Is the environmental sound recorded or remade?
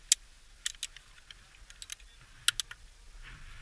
recorded